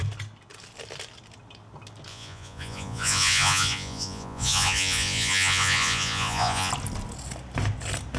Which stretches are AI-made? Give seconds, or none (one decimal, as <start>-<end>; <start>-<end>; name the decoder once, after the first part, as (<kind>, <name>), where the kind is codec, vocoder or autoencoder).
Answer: 2.1-6.7 (vocoder, Vocos)